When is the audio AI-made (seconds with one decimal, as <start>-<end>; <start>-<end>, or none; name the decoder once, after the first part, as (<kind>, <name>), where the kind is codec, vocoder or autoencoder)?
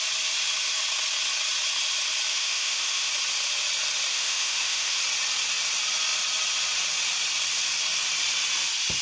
2.3-3.1 (autoencoder, DAC-VAE); 4.1-5.0